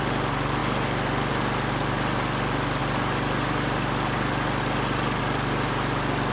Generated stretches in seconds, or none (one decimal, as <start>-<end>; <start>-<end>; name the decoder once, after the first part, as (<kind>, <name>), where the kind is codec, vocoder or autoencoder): none

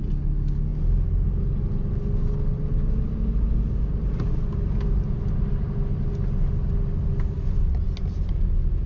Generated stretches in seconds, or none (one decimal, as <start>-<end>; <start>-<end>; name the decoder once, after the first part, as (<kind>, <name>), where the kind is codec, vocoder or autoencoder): none